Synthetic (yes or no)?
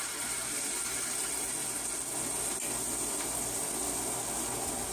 no